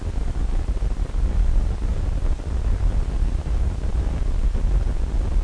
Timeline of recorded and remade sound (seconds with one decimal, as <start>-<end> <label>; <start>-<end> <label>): 0.0-5.4 recorded